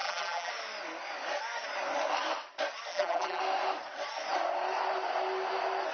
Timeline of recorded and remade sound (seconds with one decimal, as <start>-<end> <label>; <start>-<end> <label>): 0.0-0.5 remade; 0.5-2.9 recorded; 2.9-3.4 remade; 3.4-5.9 recorded